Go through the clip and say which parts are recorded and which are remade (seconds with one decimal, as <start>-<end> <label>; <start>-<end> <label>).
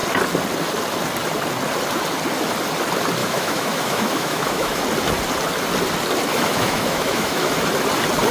0.0-3.2 recorded; 3.2-4.8 remade; 4.8-6.3 recorded; 6.3-7.5 remade; 7.5-8.3 recorded